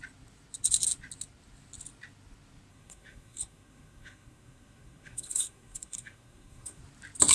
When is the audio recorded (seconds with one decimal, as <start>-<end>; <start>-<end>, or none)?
0.0-2.7; 6.8-7.3